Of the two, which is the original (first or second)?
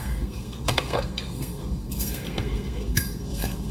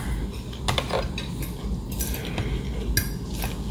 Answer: second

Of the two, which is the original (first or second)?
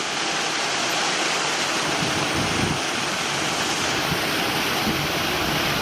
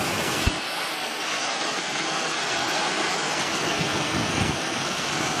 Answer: first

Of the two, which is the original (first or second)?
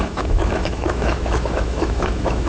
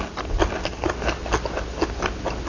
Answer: second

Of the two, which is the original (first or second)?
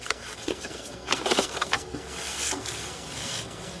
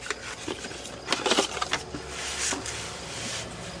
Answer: second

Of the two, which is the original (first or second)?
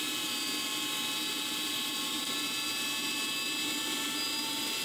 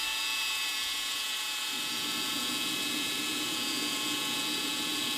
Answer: first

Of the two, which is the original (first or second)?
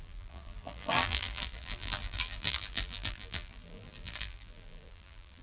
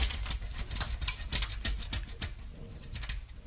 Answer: second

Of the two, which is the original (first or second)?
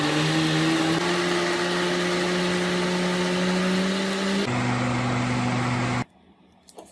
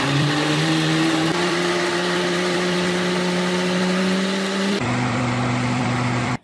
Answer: first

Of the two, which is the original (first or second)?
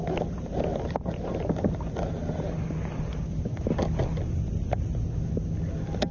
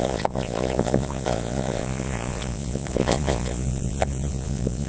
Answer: first